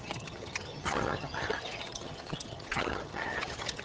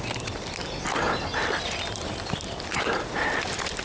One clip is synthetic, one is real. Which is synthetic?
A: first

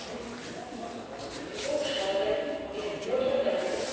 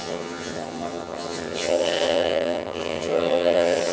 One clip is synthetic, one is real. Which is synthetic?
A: second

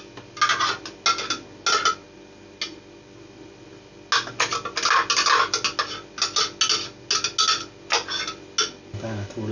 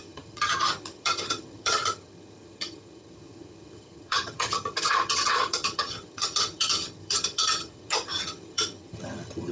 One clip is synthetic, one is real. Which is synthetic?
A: second